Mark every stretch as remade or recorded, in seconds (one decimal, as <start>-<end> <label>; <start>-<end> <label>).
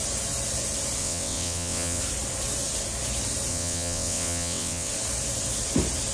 0.0-1.0 recorded; 1.0-2.0 remade; 2.0-3.5 recorded; 3.5-4.9 remade; 4.9-6.1 recorded